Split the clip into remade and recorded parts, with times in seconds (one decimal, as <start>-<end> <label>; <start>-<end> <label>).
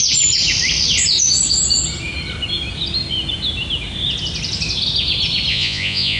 0.0-5.5 recorded; 5.5-6.2 remade